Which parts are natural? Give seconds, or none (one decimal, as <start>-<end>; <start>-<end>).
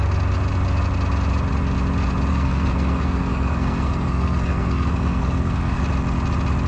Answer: 0.0-2.3; 5.8-6.7